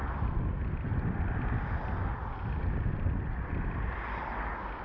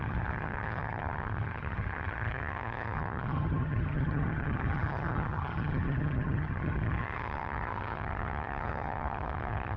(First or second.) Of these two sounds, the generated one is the second